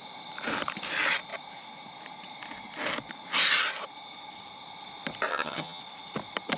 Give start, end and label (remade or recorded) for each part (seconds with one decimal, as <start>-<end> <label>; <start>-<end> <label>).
0.0-5.3 recorded; 5.3-5.8 remade; 5.8-6.6 recorded